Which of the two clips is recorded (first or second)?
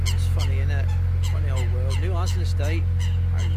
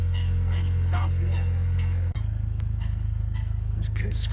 first